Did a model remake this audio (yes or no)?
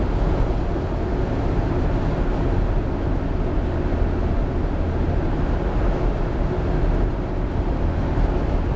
no